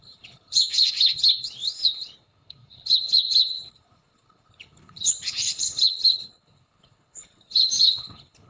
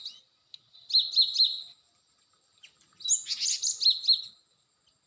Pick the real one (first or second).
second